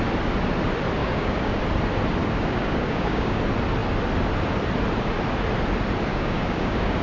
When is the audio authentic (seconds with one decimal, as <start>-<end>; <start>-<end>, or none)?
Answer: 0.0-1.0; 1.6-2.2; 3.4-6.1